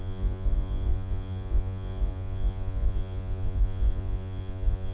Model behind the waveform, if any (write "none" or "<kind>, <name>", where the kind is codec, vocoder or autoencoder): vocoder, Vocos